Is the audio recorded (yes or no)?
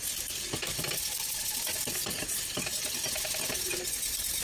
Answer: yes